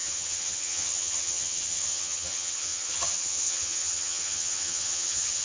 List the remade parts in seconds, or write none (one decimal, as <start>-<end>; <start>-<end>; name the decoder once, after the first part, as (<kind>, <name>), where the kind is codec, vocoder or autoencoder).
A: 0.0-5.4 (vocoder, HiFi-GAN)